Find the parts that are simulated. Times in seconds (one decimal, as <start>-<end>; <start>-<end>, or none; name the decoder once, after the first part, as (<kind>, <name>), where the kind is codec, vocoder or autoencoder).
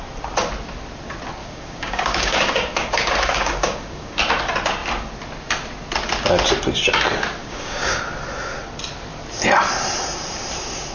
1.4-4.2 (codec, DAC); 7.4-8.0